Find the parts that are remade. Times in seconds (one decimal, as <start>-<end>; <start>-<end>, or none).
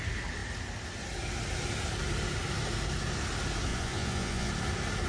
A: 3.7-4.5